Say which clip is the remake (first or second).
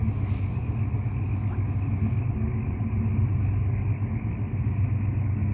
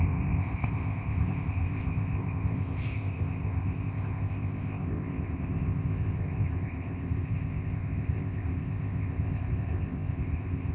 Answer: second